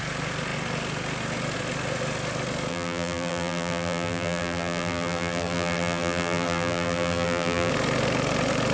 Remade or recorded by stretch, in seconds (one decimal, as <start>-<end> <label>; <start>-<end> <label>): 0.0-2.7 recorded; 2.7-7.7 remade; 7.7-8.7 recorded